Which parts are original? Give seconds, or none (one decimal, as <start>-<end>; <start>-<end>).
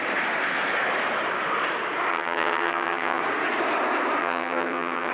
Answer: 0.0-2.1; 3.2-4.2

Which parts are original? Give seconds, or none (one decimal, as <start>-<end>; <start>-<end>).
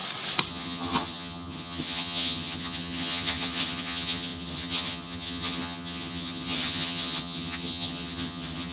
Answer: 0.0-0.5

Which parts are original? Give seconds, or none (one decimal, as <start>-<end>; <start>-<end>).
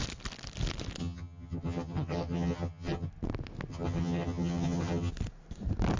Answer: 0.0-1.0; 3.1-3.7; 5.1-6.0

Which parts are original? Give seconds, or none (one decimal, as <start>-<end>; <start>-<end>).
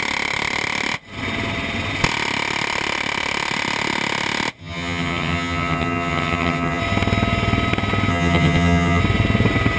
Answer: 0.0-4.6; 6.8-8.1; 9.0-9.8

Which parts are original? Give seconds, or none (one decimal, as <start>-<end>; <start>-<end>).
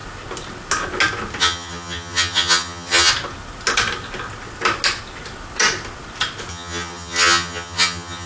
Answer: 0.0-1.4; 3.1-6.5